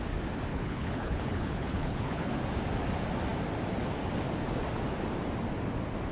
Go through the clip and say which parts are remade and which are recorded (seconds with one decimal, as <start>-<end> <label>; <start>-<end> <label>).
0.0-0.5 recorded; 0.5-2.4 remade; 2.4-6.1 recorded